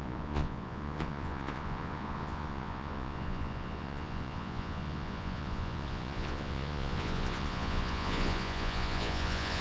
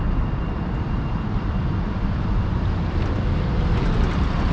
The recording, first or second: second